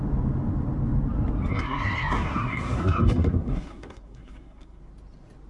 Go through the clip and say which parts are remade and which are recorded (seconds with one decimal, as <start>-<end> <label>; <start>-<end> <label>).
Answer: 0.0-1.5 recorded; 1.5-4.8 remade; 4.8-5.5 recorded